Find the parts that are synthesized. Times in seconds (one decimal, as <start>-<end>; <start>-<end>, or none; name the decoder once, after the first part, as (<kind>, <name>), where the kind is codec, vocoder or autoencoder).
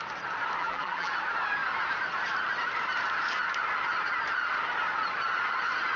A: 0.6-1.1 (vocoder, BigVGAN v2)